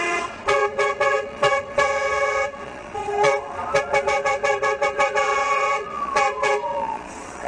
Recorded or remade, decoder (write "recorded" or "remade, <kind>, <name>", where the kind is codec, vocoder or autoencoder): remade, vocoder, Vocos